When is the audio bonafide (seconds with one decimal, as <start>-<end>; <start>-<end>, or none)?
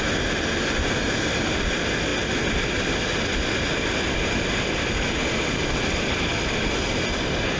0.0-7.6